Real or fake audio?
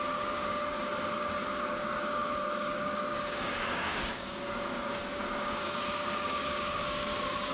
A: fake